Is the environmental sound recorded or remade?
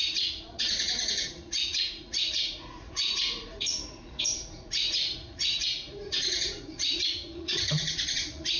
remade